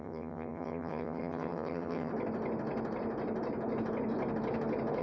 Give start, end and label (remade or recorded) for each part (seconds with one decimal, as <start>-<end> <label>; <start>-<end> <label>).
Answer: 0.0-2.1 remade; 2.1-5.0 recorded